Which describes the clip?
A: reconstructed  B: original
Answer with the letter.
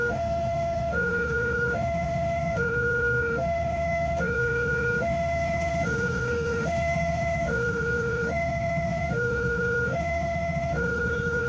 A